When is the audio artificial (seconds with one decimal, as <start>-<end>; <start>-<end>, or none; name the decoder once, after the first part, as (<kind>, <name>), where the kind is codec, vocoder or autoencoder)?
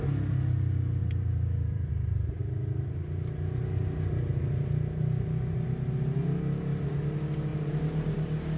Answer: 1.0-1.9 (vocoder, BigVGAN v2); 7.5-8.6